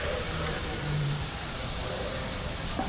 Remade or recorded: remade